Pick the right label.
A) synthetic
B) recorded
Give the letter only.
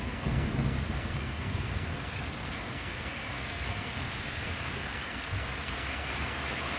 A